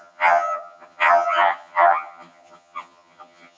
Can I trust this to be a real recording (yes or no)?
no